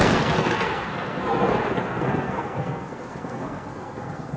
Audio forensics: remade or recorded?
remade